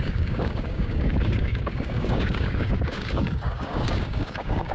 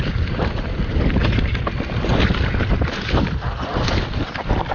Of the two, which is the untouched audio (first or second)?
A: second